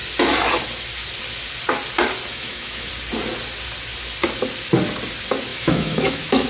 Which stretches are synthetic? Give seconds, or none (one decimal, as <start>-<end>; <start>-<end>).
2.3-2.9; 5.5-6.5